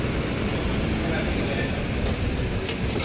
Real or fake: real